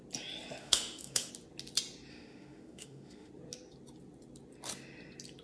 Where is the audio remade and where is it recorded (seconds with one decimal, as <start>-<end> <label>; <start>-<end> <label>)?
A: 0.0-0.6 recorded; 0.6-1.3 remade; 1.3-2.1 recorded; 2.1-3.3 remade; 3.3-5.4 recorded